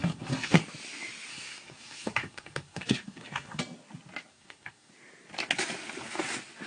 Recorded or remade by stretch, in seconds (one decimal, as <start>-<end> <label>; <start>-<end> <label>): 0.0-0.6 remade; 0.6-1.3 recorded; 1.3-3.6 remade; 3.6-4.3 recorded; 4.3-4.9 remade; 4.9-6.7 recorded